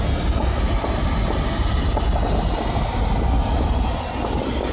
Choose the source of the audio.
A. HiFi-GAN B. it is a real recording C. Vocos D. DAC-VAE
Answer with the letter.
B